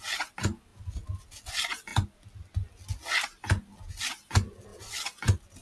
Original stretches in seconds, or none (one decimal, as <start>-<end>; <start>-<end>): 0.0-5.6

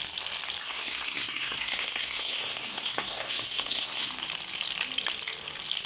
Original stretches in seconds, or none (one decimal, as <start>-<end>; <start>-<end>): 0.0-0.6; 4.1-5.9

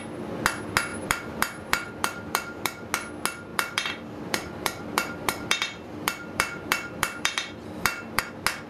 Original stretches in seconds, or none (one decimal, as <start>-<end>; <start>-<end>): 0.0-0.9; 2.9-3.5; 8.2-8.7

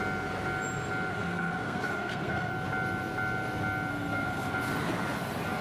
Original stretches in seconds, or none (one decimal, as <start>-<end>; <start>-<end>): 0.0-1.1; 2.5-3.9; 4.5-5.6

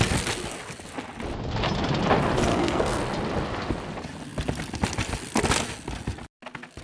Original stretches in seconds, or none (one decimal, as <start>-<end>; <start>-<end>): 0.0-2.5; 3.0-6.8

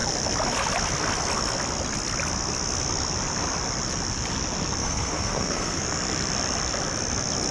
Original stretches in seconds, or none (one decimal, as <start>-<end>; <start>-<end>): 0.0-4.8; 5.8-7.5

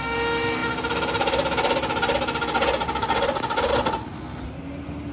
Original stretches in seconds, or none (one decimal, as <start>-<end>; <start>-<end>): 0.0-5.1

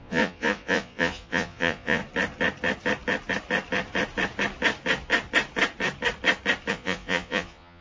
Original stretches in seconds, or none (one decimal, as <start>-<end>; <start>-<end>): 2.0-6.7